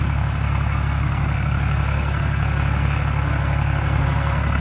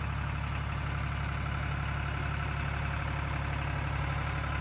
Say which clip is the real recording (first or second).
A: second